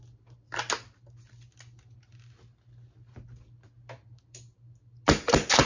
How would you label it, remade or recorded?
recorded